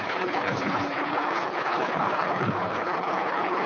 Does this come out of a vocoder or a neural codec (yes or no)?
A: yes